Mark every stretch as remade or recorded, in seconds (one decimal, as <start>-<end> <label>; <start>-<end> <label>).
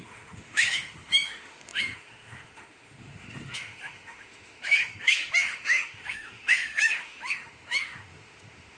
0.0-8.8 remade